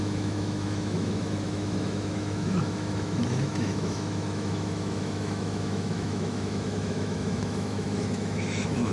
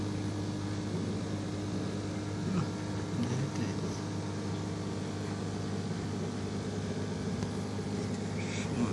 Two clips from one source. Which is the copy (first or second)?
first